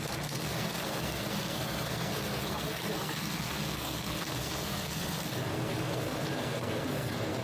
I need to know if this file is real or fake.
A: fake